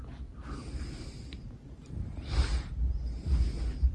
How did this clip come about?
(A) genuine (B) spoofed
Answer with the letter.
A